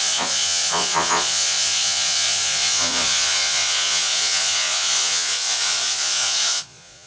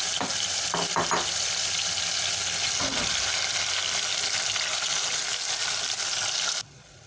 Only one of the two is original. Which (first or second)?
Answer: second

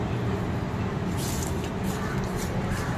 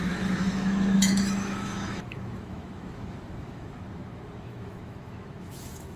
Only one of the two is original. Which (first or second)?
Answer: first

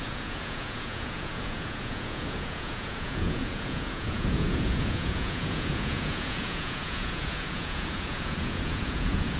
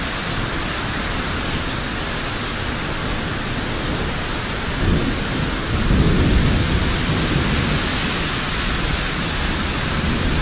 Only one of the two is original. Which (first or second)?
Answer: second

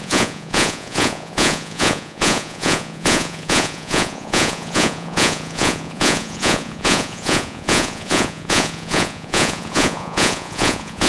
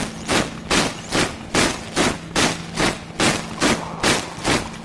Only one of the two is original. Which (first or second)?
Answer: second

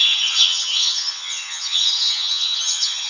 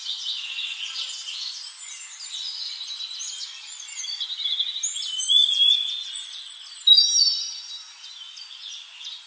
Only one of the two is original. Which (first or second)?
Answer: second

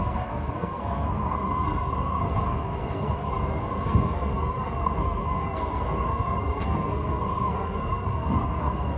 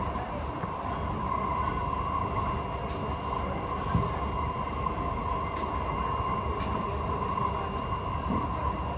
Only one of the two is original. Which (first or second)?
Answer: second